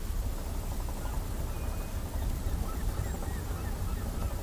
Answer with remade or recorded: recorded